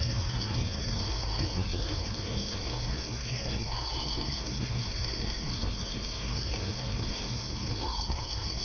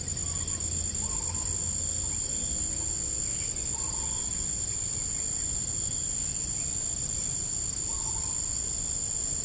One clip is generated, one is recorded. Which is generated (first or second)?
first